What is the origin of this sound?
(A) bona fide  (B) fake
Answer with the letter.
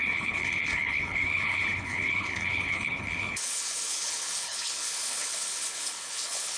B